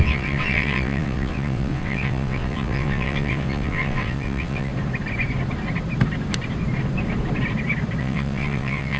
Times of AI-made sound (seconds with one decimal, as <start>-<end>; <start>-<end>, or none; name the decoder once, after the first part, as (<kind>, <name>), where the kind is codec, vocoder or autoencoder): 0.0-4.7 (vocoder, WaveNeXt); 8.0-9.0